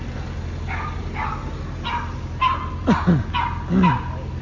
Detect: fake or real real